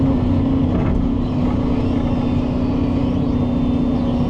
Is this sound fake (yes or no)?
no